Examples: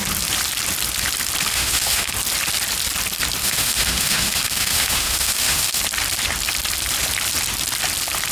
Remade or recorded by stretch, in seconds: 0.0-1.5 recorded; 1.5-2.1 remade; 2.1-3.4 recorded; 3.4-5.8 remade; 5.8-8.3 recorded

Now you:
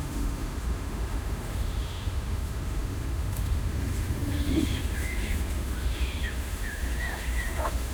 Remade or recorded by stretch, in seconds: 0.0-7.9 remade

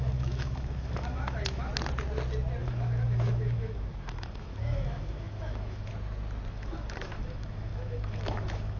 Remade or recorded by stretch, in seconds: 0.0-1.7 remade; 1.7-2.6 recorded; 2.6-5.9 remade; 5.9-6.5 recorded; 6.5-8.8 remade

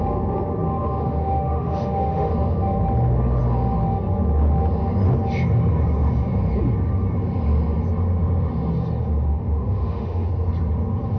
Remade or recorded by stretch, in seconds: 0.0-1.0 recorded; 1.0-2.3 remade; 2.3-9.3 recorded; 9.3-10.3 remade; 10.3-11.2 recorded